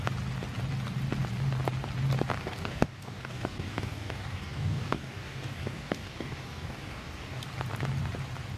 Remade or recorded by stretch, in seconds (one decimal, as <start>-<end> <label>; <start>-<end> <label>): 0.0-2.4 recorded; 2.4-7.4 remade; 7.4-8.6 recorded

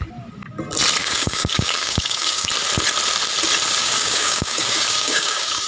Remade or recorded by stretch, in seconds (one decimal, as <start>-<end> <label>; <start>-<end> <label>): 0.0-1.0 recorded; 1.0-2.5 remade; 2.5-3.8 recorded; 3.8-5.7 remade

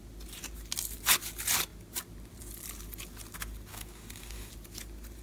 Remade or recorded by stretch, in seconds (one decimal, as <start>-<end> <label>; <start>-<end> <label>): 0.0-3.7 recorded; 3.7-4.5 remade; 4.5-5.2 recorded

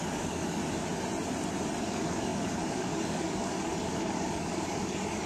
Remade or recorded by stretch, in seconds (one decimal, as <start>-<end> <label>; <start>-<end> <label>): 0.0-0.6 remade; 0.6-1.8 recorded; 1.8-5.3 remade

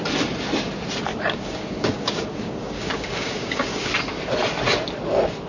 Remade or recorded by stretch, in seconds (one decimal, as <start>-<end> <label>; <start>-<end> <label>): 0.0-1.1 recorded; 1.1-3.9 remade; 3.9-5.5 recorded

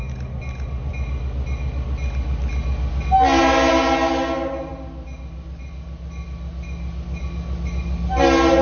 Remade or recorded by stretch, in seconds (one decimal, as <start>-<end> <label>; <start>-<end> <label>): 0.0-8.6 recorded

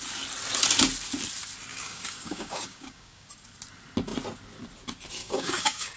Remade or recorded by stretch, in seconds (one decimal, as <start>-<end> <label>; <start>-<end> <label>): 0.0-1.7 recorded; 1.7-3.3 remade; 3.3-5.2 recorded; 5.2-6.0 remade